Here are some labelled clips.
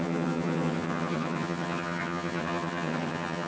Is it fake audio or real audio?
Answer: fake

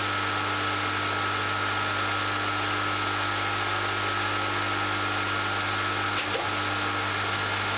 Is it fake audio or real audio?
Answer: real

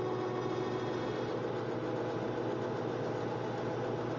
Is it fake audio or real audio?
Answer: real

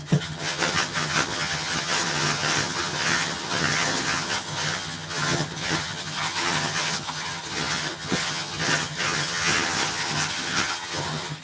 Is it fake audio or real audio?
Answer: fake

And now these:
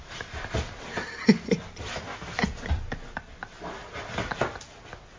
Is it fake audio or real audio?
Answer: real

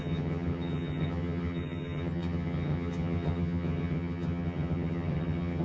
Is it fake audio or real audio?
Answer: fake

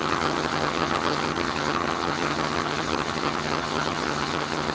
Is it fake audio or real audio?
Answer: fake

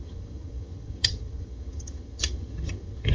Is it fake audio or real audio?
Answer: fake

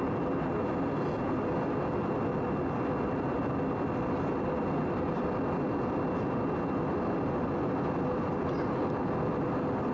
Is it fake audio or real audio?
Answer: real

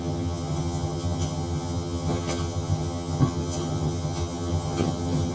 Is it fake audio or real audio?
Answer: fake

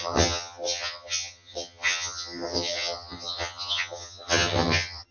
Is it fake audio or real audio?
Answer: fake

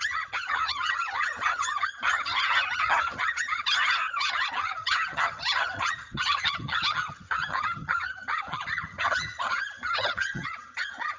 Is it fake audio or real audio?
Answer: fake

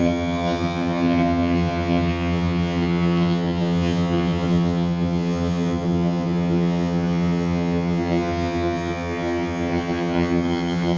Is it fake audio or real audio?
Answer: fake